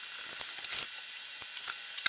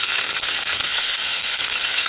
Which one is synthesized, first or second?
second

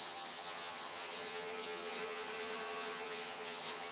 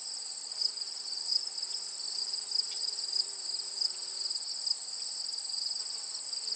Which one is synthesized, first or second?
first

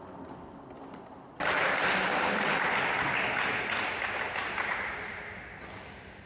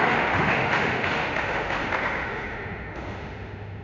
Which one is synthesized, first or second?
second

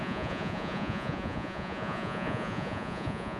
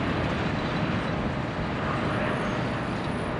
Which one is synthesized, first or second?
first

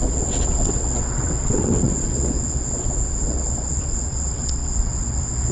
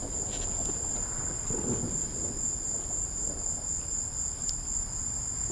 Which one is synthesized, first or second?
first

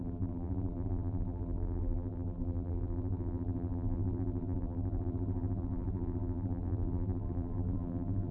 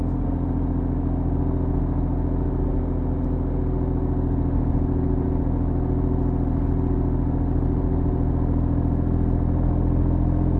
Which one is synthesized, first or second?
first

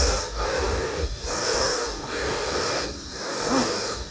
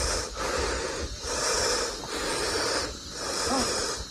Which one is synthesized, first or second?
first